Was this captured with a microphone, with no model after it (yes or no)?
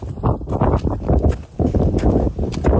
yes